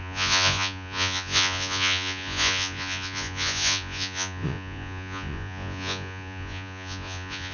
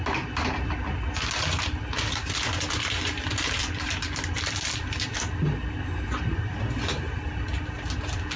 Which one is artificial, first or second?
first